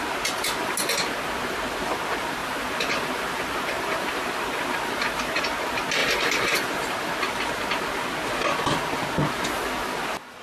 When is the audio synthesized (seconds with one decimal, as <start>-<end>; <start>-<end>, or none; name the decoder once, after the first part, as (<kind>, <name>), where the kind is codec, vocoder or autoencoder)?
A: 2.4-5.4 (vocoder, BigVGAN v2); 6.0-6.7